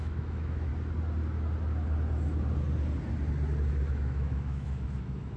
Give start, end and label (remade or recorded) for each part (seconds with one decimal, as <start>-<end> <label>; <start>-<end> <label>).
0.0-0.7 remade; 0.7-3.9 recorded; 3.9-5.4 remade